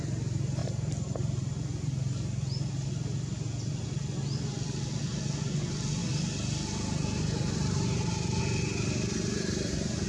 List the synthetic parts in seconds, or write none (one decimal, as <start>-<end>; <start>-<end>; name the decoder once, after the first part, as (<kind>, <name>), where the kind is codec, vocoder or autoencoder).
none